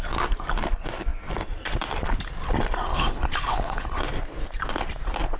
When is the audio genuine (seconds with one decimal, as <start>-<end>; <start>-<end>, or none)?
0.0-2.9; 4.0-5.4